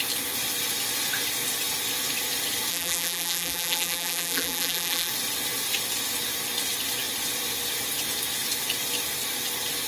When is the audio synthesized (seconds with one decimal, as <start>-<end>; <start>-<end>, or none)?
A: 2.7-5.1